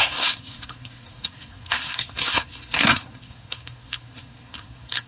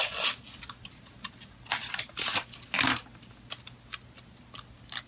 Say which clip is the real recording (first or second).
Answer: second